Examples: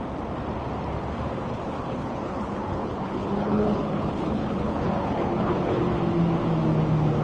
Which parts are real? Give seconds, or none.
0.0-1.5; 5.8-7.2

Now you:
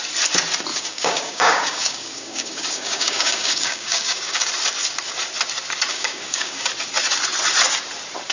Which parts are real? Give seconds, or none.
0.0-0.7; 4.5-5.9; 6.7-8.3